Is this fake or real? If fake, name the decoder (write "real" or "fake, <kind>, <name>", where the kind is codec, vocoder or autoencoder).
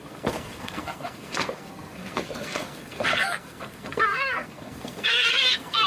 fake, codec, SNAC